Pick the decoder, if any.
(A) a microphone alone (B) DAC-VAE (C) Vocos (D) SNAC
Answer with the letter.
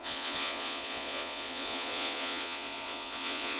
C